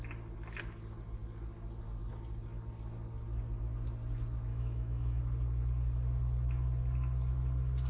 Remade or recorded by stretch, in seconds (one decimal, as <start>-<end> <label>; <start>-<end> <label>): 0.0-4.5 recorded; 4.5-5.2 remade; 5.2-7.9 recorded